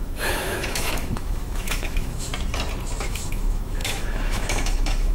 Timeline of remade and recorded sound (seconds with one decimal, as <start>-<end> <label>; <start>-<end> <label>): 0.0-2.3 remade; 2.3-3.0 recorded; 3.0-5.1 remade

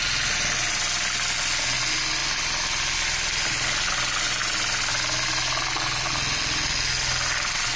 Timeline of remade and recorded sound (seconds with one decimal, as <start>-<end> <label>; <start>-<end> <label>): 0.0-7.8 recorded

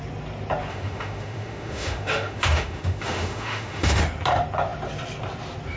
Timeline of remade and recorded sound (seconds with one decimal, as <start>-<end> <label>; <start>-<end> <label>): 0.0-0.7 recorded; 0.7-4.0 remade; 4.0-5.8 recorded

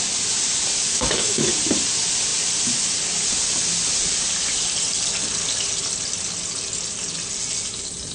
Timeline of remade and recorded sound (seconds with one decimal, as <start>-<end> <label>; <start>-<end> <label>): 0.0-0.9 recorded; 0.9-1.5 remade; 1.5-8.1 recorded